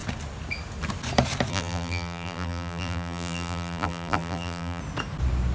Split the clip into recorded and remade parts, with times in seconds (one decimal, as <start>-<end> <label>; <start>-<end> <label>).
0.0-1.5 recorded; 1.5-4.8 remade; 4.8-5.5 recorded